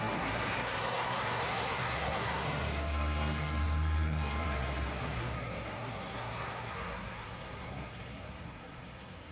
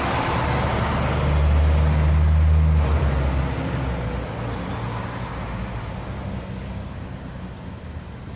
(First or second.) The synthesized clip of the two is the first